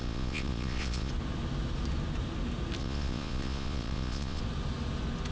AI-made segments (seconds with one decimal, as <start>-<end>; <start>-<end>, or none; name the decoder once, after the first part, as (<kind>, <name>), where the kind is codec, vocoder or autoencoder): 0.0-1.1 (vocoder, Vocos); 2.8-4.4